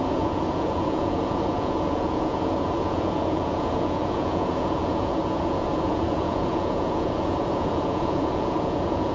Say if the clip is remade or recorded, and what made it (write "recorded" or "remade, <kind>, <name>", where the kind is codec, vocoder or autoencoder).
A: remade, vocoder, Vocos